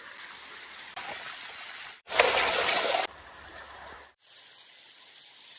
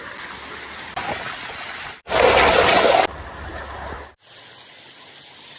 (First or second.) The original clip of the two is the second